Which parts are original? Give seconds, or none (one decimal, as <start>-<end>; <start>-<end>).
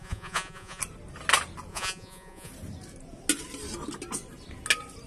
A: 0.8-1.7; 2.5-5.1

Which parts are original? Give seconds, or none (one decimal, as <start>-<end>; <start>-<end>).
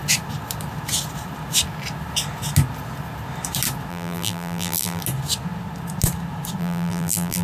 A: 0.0-3.9; 5.0-6.6